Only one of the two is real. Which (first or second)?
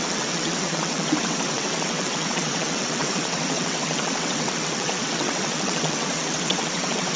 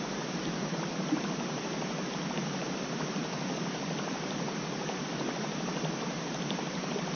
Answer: second